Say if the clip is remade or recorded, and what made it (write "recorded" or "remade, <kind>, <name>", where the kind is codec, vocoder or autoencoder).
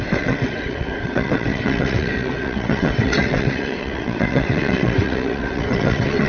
remade, vocoder, WaveNeXt